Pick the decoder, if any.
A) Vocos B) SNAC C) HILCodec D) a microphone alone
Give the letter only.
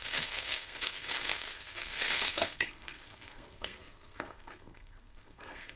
B